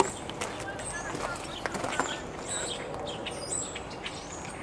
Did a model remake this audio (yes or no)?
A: no